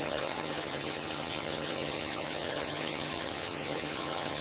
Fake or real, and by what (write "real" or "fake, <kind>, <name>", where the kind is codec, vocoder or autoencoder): fake, vocoder, HiFi-GAN